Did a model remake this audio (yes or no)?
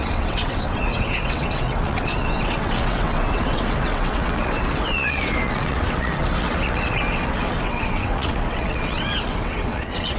yes